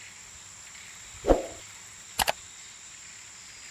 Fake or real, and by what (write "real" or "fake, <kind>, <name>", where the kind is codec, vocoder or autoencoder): real